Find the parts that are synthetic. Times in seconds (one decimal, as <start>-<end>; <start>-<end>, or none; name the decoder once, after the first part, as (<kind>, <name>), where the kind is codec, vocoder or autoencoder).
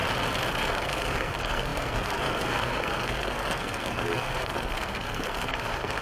0.6-6.0 (codec, SNAC)